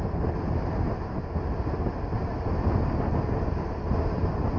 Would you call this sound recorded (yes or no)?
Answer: yes